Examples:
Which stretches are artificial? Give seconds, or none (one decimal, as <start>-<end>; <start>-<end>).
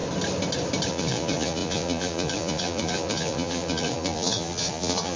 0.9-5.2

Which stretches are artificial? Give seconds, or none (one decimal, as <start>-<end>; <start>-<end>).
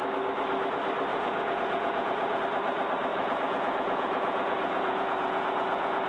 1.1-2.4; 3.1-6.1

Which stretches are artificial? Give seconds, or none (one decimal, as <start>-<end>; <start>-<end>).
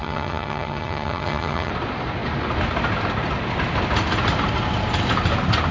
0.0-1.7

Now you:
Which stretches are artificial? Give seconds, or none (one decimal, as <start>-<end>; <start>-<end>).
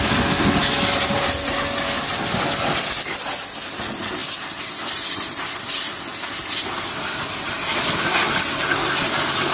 none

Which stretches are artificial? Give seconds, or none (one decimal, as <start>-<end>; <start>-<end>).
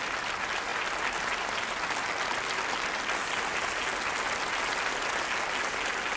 none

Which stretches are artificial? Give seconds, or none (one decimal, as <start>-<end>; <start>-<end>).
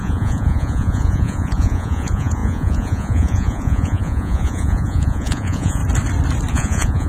0.0-5.8; 6.5-7.1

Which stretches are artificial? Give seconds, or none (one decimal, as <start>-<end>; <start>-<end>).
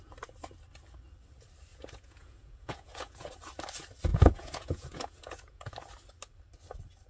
1.7-3.3; 4.1-5.7